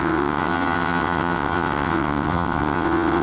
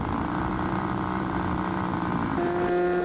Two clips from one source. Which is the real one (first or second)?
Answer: second